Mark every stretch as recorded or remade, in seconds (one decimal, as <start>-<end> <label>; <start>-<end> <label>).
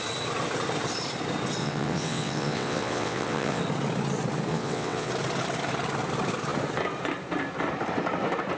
0.0-1.6 recorded; 1.6-3.6 remade; 3.6-4.5 recorded; 4.5-5.1 remade; 5.1-8.6 recorded